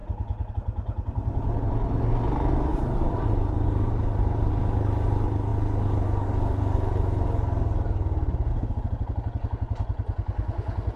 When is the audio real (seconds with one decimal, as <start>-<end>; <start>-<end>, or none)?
0.0-2.7; 4.5-11.0